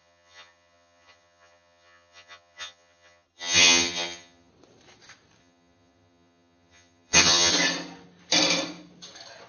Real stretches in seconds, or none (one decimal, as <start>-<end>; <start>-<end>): 4.5-5.4; 7.5-9.5